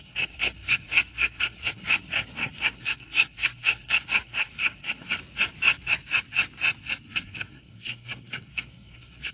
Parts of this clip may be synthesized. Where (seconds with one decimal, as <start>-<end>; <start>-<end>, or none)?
0.0-5.2; 7.2-9.3